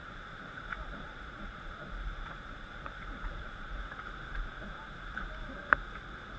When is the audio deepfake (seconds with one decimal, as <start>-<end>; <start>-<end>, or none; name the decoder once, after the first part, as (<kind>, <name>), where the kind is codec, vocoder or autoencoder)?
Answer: 0.0-3.8 (vocoder, Vocos)